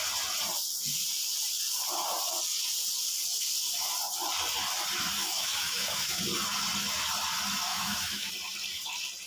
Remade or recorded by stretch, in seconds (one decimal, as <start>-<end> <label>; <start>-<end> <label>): 0.0-5.2 recorded; 5.2-6.2 remade; 6.2-7.7 recorded; 7.7-8.3 remade; 8.3-9.3 recorded